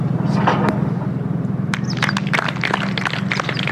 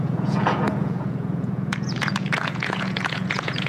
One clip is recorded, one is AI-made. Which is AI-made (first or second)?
second